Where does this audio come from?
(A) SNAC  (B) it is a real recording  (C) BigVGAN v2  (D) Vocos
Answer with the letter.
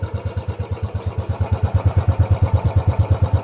C